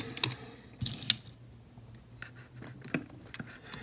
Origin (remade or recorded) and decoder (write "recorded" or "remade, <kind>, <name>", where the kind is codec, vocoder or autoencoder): recorded